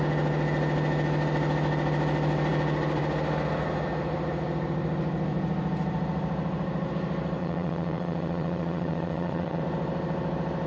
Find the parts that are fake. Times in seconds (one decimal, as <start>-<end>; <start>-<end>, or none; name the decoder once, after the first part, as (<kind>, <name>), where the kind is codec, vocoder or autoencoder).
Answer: 7.4-9.6 (vocoder, Vocos)